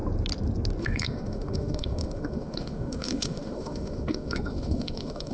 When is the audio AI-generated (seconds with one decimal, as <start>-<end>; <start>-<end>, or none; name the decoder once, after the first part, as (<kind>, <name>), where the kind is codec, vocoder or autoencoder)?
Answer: 0.8-5.3 (autoencoder, DAC-VAE)

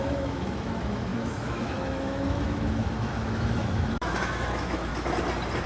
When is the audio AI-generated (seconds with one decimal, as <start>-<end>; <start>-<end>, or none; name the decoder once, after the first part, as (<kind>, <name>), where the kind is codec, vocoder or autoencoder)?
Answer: 0.0-4.9 (autoencoder, DAC-VAE)

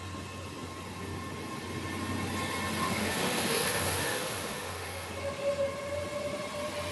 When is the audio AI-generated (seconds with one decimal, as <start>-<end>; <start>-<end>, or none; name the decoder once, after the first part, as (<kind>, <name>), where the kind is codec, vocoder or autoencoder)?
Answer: 2.8-5.1 (autoencoder, DAC-VAE)

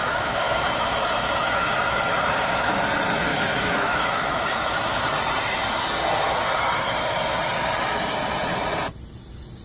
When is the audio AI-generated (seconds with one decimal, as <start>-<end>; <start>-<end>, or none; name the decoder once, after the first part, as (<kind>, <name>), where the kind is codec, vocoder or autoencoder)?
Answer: 0.0-2.8 (autoencoder, DAC-VAE); 3.3-5.1

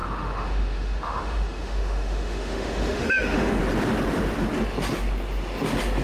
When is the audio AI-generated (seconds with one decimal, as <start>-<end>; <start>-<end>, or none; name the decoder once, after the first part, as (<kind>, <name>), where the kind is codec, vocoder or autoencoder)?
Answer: 0.0-3.6 (autoencoder, DAC-VAE)